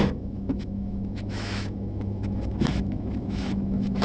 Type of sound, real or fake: fake